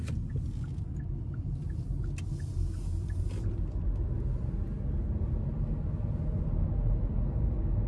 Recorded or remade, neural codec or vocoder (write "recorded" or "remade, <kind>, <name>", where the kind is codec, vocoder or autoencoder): recorded